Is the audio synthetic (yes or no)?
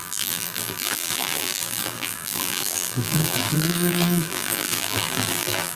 yes